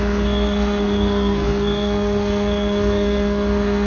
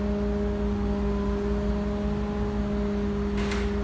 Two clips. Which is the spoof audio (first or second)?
first